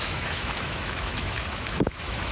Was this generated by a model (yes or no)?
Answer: yes